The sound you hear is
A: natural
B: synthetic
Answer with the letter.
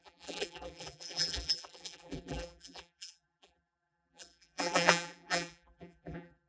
B